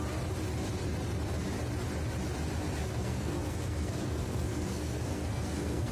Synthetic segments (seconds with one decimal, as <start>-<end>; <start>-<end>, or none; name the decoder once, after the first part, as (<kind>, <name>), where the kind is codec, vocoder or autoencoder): 2.8-5.9 (codec, SNAC)